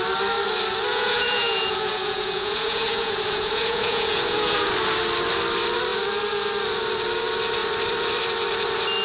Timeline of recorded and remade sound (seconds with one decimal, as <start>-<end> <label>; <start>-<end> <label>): 0.0-0.9 recorded; 0.9-4.7 remade; 4.7-9.0 recorded